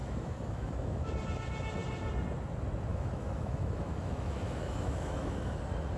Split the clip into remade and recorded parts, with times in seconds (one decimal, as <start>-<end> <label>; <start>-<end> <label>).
0.0-1.1 remade; 1.1-2.9 recorded; 2.9-5.6 remade; 5.6-6.0 recorded